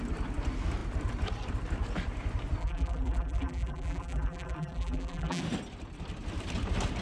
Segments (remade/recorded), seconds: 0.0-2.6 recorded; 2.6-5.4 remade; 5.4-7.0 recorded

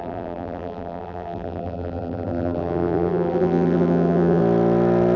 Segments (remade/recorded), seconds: 0.0-4.4 remade; 4.4-5.2 recorded

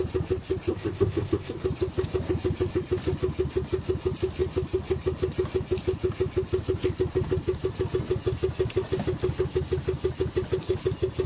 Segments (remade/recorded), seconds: 0.0-0.7 recorded; 0.7-1.6 remade; 1.6-11.3 recorded

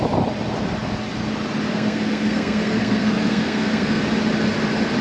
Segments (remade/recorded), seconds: 0.0-1.7 recorded; 1.7-4.0 remade; 4.0-5.0 recorded

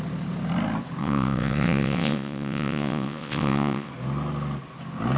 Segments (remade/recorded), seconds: 0.0-1.0 recorded; 1.0-3.9 remade; 3.9-5.2 recorded

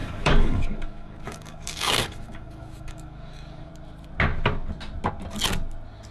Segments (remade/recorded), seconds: 0.0-3.7 remade; 3.7-6.1 recorded

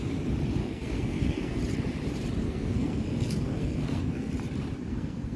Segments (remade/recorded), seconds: 0.0-0.6 recorded; 0.6-1.6 remade; 1.6-2.4 recorded; 2.4-4.3 remade; 4.3-4.9 recorded; 4.9-5.4 remade

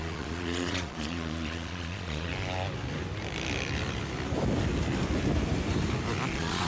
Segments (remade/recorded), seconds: 0.0-2.3 remade; 2.3-6.3 recorded; 6.3-6.7 remade